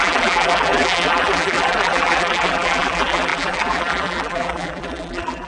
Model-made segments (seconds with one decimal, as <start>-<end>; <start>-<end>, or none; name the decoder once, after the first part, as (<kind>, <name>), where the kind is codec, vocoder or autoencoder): 0.0-5.5 (vocoder, BigVGAN v2)